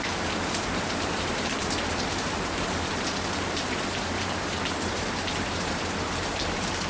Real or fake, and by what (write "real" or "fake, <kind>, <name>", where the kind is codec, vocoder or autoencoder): fake, vocoder, BigVGAN v2